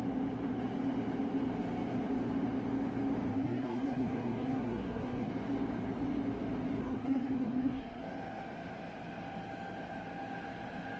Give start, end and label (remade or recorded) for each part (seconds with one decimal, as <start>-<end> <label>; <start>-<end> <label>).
0.0-3.3 recorded; 3.3-5.3 remade; 5.3-6.8 recorded; 6.8-8.0 remade; 8.0-11.0 recorded